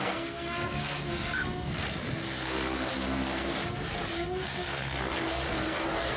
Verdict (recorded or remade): remade